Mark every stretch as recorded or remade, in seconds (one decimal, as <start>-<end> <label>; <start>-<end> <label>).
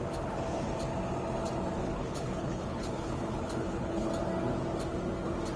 0.0-1.8 recorded; 1.8-4.1 remade; 4.1-5.6 recorded